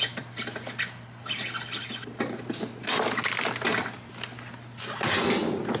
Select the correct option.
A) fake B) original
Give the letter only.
B